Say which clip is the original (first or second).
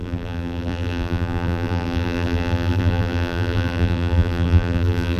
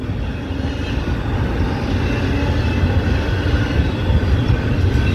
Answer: second